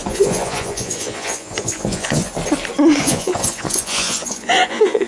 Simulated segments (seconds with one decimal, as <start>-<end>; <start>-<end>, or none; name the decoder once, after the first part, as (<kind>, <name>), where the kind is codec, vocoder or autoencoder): 0.0-2.3 (vocoder, Vocos); 3.0-5.1